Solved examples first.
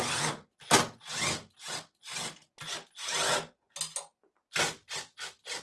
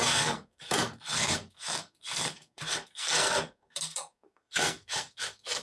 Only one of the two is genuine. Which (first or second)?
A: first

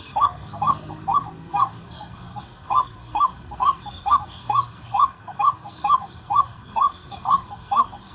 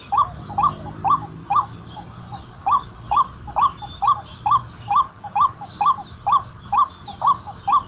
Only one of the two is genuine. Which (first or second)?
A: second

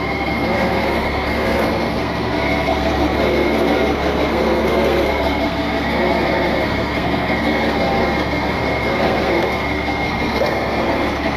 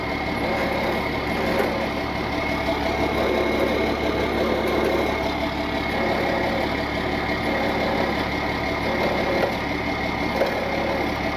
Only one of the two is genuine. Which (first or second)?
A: second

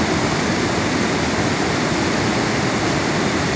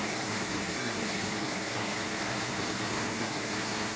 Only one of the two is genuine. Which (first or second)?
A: first